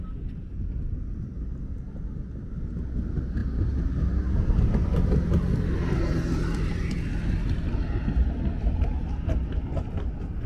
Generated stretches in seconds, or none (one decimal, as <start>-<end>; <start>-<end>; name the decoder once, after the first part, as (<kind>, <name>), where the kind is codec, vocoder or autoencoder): none